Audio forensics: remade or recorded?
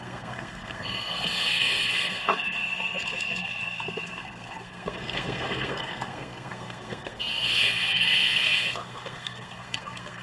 remade